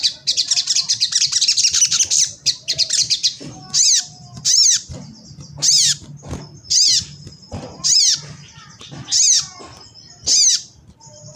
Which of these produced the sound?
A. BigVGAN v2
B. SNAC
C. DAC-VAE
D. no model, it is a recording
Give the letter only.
D